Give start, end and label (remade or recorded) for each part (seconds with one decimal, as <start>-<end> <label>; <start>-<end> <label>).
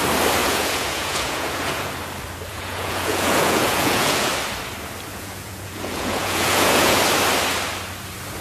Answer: 0.0-0.4 recorded; 0.4-1.9 remade; 1.9-2.5 recorded; 2.5-4.3 remade; 4.3-5.1 recorded; 5.1-7.0 remade; 7.0-8.4 recorded